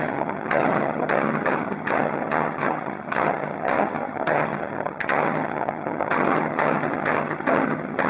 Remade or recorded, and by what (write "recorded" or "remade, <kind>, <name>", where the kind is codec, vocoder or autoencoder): remade, vocoder, HiFi-GAN